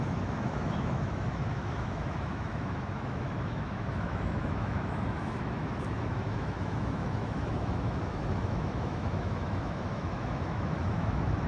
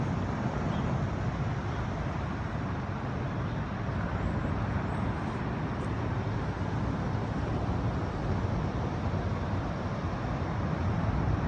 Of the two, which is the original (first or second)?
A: second